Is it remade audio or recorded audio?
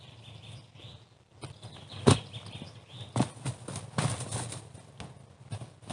recorded